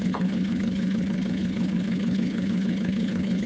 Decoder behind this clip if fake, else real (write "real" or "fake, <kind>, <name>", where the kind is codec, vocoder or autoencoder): fake, codec, HILCodec